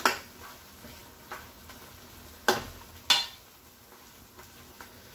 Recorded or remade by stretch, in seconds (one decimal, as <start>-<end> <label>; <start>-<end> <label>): 0.0-5.1 recorded

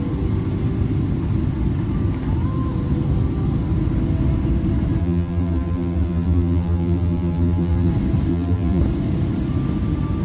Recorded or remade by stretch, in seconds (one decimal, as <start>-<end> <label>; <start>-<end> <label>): 0.0-5.0 recorded; 5.0-7.9 remade; 7.9-8.3 recorded; 8.3-8.8 remade; 8.8-10.2 recorded

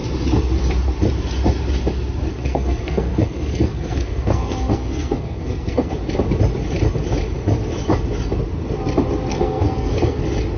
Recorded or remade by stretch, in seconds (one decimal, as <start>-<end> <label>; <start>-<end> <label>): 0.0-2.3 recorded; 2.3-5.9 remade; 5.9-9.3 recorded; 9.3-10.2 remade; 10.2-10.6 recorded

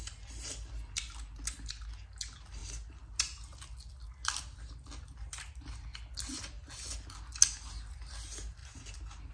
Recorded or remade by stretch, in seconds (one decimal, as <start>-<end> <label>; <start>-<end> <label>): 0.0-9.3 recorded

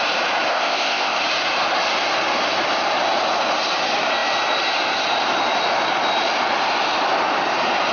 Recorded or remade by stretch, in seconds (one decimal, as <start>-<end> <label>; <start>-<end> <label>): 0.0-0.5 recorded; 0.5-1.2 remade; 1.2-7.9 recorded

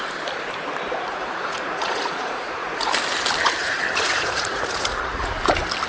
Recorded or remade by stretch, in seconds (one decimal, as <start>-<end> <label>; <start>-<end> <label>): 0.0-1.1 recorded; 1.1-2.9 remade; 2.9-3.6 recorded; 3.6-5.3 remade; 5.3-5.9 recorded

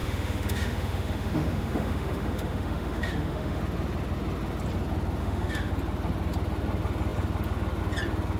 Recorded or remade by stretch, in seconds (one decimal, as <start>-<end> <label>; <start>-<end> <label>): 0.0-3.6 remade; 3.6-5.2 recorded; 5.2-5.7 remade; 5.7-8.4 recorded